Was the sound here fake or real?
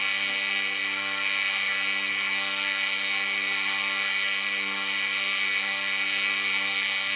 fake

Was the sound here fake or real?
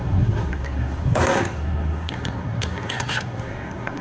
fake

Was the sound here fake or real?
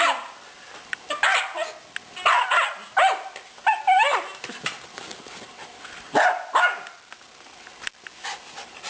real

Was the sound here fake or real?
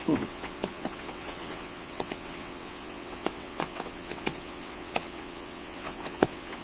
fake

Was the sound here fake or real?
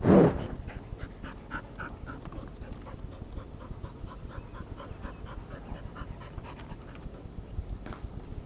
real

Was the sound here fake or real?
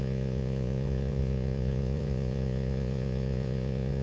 fake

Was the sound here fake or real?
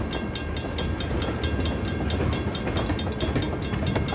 real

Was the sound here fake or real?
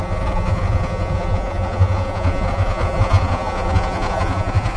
fake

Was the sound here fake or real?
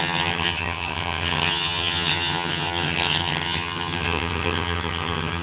fake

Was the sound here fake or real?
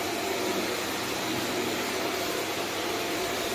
real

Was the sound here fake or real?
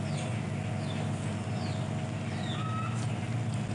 real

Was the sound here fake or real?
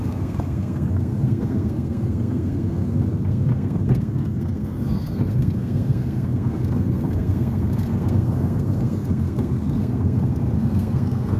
fake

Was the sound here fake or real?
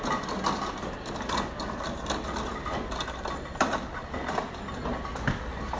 real